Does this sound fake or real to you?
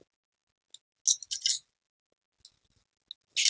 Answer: real